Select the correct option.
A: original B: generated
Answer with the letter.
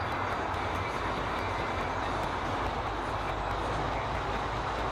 A